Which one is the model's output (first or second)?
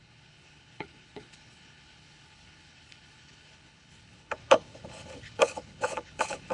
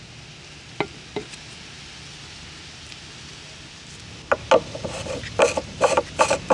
first